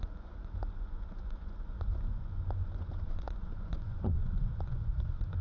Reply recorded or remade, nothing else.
remade